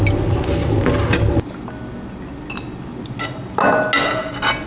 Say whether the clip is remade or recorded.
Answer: recorded